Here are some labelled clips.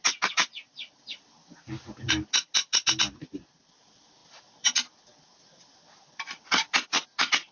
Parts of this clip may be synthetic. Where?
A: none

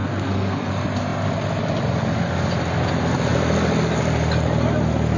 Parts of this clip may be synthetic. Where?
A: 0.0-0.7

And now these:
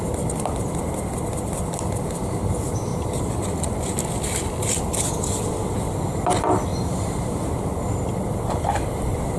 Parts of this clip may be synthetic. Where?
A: 2.9-3.4; 6.7-7.6

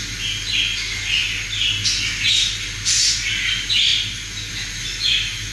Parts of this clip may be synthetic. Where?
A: none

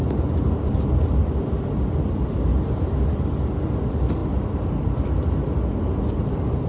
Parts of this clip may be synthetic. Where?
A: none

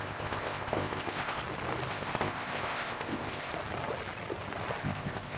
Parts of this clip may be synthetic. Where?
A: 0.0-1.4; 1.9-3.5; 4.8-5.4

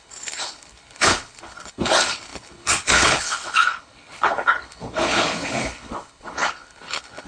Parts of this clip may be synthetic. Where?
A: 0.0-7.3

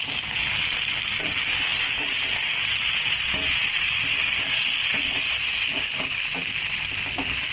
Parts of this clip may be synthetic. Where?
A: none